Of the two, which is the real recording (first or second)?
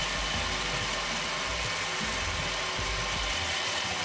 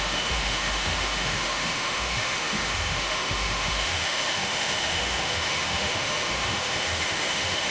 first